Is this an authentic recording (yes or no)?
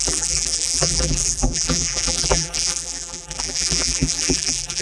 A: no